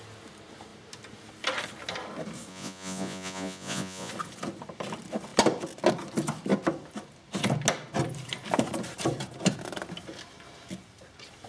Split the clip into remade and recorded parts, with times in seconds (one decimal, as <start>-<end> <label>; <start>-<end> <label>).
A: 0.0-2.5 recorded; 2.5-4.1 remade; 4.1-11.5 recorded